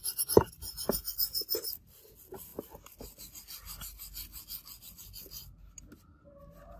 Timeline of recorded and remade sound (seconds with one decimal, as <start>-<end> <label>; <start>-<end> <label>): 0.0-6.8 recorded